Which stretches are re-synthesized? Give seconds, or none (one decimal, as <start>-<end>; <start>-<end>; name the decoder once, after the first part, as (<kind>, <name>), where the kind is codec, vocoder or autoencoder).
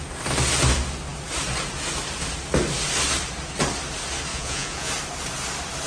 4.3-4.9 (vocoder, Vocos)